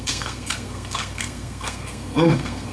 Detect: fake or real fake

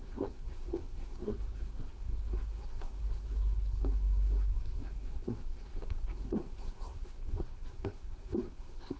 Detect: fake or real fake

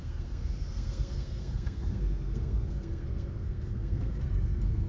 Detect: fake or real fake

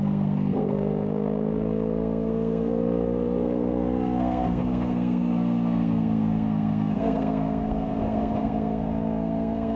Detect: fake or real fake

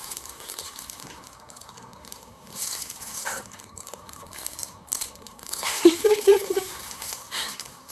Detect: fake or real fake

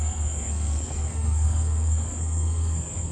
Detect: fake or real fake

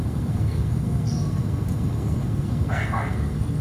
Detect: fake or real fake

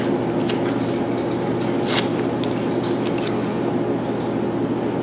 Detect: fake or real real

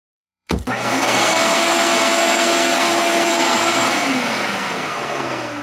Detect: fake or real fake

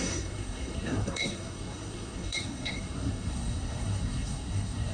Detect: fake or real fake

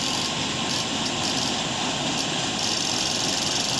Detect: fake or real real